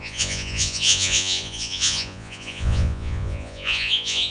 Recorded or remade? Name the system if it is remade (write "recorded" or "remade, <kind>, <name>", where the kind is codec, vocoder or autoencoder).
remade, vocoder, Vocos